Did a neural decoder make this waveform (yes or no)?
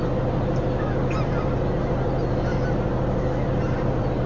no